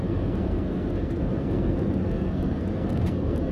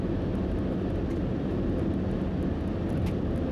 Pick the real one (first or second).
second